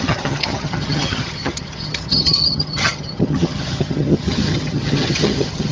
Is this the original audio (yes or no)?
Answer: no